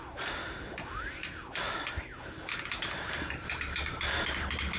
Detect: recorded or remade recorded